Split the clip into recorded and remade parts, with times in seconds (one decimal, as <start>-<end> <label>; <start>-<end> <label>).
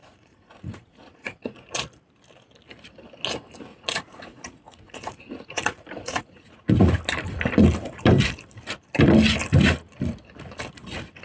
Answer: 0.0-1.8 remade; 1.8-3.7 recorded; 3.7-7.0 remade; 7.0-11.2 recorded